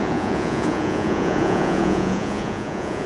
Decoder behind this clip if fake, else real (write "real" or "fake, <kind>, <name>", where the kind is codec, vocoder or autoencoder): fake, vocoder, Vocos